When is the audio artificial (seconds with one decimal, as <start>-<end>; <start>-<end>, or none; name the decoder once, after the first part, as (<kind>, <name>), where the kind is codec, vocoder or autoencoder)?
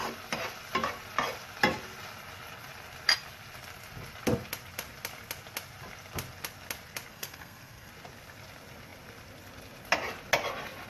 7.1-7.9 (codec, SNAC)